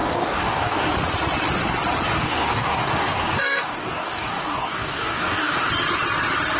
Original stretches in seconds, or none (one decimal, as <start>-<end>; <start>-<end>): 0.9-2.1; 5.7-6.6